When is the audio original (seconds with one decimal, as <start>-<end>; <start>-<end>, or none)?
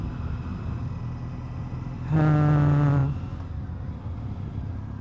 0.0-5.0